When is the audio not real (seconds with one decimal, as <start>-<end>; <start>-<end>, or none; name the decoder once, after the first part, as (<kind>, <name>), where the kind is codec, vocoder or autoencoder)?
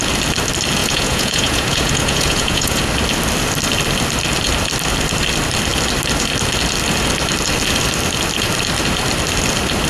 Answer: 0.8-2.8 (vocoder, Vocos)